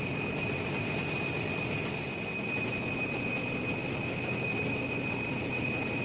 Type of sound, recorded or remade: recorded